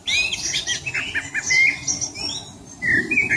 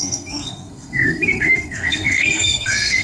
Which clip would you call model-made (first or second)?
second